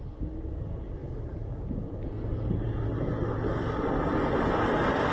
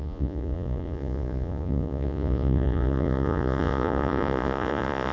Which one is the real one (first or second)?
first